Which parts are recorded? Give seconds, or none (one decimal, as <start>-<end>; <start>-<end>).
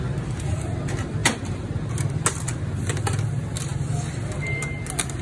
0.0-5.2